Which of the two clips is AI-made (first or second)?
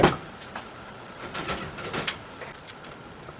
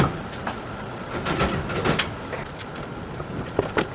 first